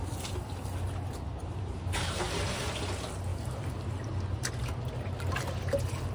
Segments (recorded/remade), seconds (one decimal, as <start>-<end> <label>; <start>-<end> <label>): 0.0-1.4 recorded; 1.4-2.2 remade; 2.2-3.3 recorded; 3.3-4.0 remade; 4.0-6.1 recorded